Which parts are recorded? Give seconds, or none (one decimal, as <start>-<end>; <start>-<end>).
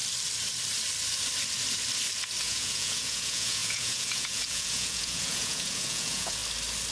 0.0-2.4; 6.4-6.9